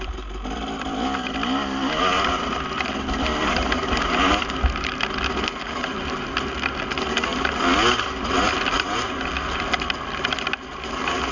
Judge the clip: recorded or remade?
recorded